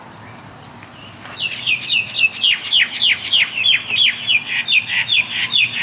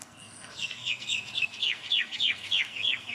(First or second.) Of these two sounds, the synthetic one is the second